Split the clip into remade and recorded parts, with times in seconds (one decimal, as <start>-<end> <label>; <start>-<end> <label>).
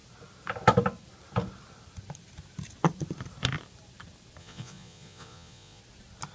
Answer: 0.0-4.4 recorded; 4.4-5.8 remade; 5.8-6.3 recorded